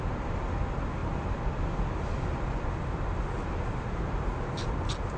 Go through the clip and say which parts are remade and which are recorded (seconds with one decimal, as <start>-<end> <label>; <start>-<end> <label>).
0.0-5.2 recorded

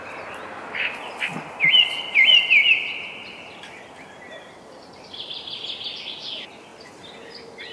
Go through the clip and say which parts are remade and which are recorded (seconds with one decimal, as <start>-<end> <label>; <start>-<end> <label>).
0.0-7.7 recorded

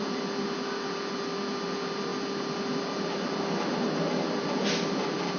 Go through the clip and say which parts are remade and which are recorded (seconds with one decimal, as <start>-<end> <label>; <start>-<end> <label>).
0.0-5.4 recorded

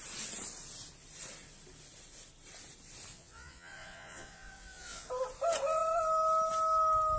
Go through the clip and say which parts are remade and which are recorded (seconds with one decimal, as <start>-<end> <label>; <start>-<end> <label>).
0.0-3.1 recorded; 3.1-5.1 remade; 5.1-7.2 recorded

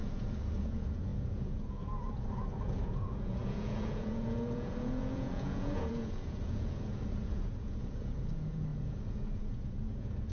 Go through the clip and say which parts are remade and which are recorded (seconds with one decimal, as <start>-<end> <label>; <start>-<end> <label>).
0.0-10.3 remade

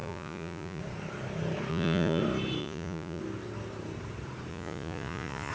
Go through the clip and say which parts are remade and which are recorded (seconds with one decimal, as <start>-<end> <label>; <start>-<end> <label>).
0.0-0.8 remade; 0.8-1.7 recorded; 1.7-2.2 remade; 2.2-2.6 recorded; 2.6-3.2 remade; 3.2-4.5 recorded; 4.5-5.5 remade

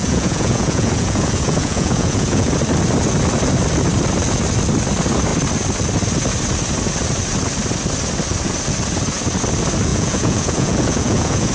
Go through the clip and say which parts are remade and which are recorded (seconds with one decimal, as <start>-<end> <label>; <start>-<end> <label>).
0.0-2.5 remade; 2.5-9.9 recorded; 9.9-11.5 remade

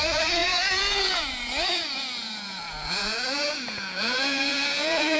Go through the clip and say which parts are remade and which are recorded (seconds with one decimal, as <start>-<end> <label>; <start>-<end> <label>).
0.0-5.2 remade